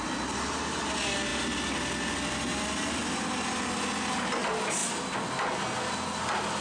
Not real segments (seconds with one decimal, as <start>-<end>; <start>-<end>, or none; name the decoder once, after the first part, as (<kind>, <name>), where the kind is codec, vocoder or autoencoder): none